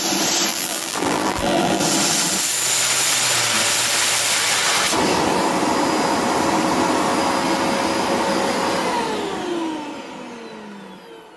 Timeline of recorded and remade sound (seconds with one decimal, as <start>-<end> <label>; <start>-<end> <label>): 0.0-0.5 recorded; 0.5-1.8 remade; 1.8-11.4 recorded